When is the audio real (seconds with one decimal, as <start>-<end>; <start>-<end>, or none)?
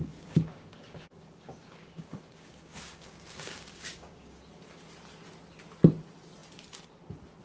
4.4-7.4